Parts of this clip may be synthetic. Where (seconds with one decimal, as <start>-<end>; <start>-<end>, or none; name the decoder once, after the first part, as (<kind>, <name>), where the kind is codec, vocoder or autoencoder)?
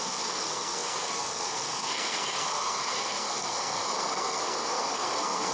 0.0-5.5 (codec, SNAC)